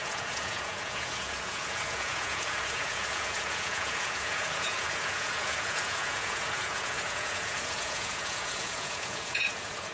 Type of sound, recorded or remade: remade